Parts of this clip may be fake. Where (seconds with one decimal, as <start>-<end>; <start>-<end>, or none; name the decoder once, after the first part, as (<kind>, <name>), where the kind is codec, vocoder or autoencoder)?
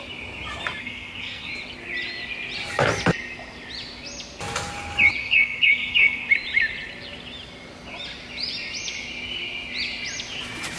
0.8-1.5 (codec, SNAC); 5.2-6.3